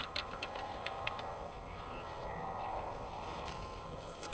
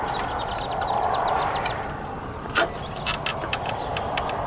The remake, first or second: first